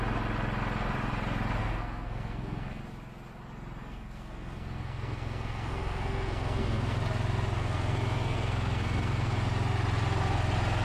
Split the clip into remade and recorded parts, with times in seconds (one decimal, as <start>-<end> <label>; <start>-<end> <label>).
0.0-1.6 recorded; 1.6-2.8 remade; 2.8-3.8 recorded; 3.8-7.0 remade; 7.0-7.6 recorded; 7.6-9.3 remade; 9.3-10.8 recorded